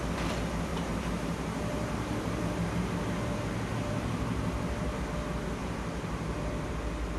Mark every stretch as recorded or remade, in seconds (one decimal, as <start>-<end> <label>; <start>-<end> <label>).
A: 0.0-0.7 recorded; 0.7-5.0 remade; 5.0-5.6 recorded; 5.6-6.7 remade; 6.7-7.2 recorded